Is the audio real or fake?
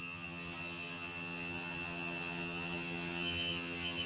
fake